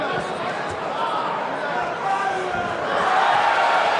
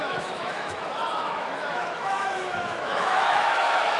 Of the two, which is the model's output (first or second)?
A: second